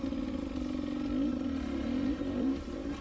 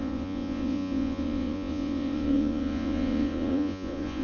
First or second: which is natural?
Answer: first